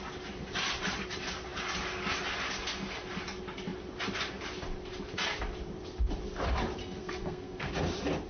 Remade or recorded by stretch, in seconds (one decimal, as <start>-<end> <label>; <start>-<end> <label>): 0.0-6.8 recorded; 6.8-7.7 remade; 7.7-8.3 recorded